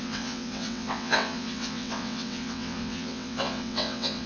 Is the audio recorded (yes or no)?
no